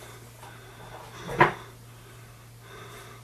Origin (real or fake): real